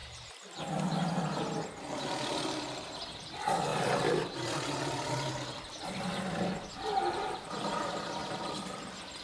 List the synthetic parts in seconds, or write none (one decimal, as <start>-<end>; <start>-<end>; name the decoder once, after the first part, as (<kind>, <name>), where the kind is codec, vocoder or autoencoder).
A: 3.2-3.7 (vocoder, BigVGAN v2); 5.9-9.2

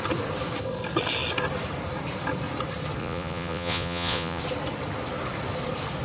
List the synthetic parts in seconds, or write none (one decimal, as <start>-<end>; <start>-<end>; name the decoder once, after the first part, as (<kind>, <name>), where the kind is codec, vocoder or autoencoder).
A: 3.0-4.4 (vocoder, Vocos)

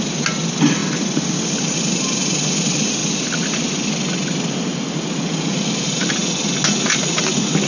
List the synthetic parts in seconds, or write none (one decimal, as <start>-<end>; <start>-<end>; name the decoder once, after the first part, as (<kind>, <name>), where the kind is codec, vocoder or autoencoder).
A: 3.0-3.9 (vocoder, BigVGAN v2)

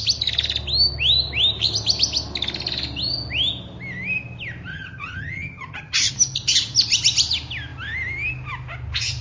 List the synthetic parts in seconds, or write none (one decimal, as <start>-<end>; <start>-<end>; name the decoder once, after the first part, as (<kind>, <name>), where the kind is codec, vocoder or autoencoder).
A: 4.7-6.1 (vocoder, HiFi-GAN)

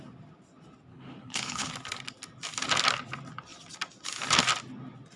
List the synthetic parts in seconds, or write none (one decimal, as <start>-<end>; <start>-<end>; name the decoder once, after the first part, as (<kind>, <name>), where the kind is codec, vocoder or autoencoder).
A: 0.9-1.7 (codec, HILCodec)

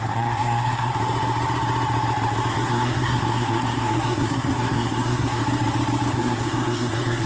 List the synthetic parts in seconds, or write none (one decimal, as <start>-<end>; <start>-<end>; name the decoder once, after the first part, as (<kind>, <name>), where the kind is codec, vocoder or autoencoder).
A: 0.0-0.9 (codec, SNAC); 2.5-5.4; 6.1-7.3

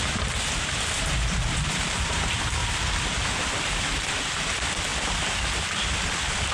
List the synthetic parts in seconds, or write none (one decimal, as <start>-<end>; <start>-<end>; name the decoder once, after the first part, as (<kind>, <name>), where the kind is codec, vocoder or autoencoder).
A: 0.0-2.6 (vocoder, BigVGAN v2); 3.4-4.9; 5.4-6.5

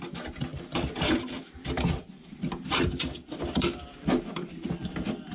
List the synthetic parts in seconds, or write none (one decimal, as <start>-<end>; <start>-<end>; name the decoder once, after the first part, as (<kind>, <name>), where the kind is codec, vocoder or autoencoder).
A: 0.0-5.3 (vocoder, BigVGAN v2)